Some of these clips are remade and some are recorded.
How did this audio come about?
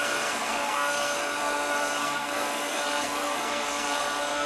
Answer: remade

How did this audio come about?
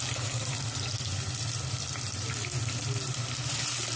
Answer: recorded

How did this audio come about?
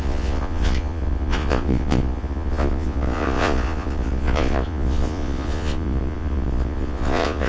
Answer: remade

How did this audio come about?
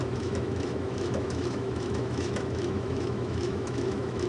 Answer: remade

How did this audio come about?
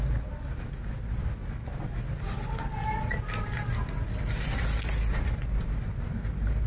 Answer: recorded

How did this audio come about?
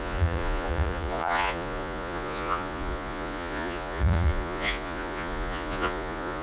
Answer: remade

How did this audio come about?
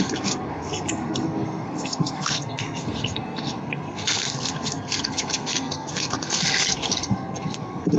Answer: remade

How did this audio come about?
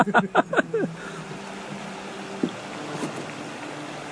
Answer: recorded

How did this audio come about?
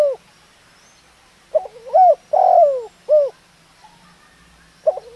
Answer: recorded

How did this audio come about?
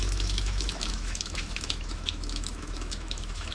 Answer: remade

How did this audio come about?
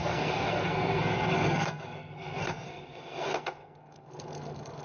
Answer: remade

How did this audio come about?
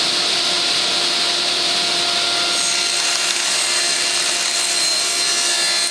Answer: recorded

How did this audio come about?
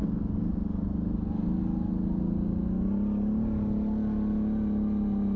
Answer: recorded